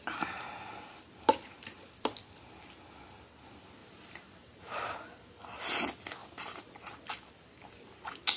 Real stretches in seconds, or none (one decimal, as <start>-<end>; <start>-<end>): 0.0-3.8; 5.2-6.2; 7.4-8.4